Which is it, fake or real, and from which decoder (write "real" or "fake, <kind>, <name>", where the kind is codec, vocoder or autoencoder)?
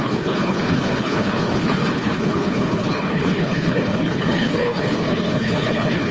fake, codec, HILCodec